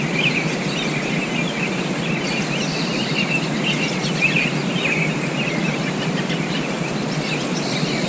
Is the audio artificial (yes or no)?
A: no